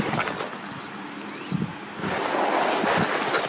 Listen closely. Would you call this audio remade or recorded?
recorded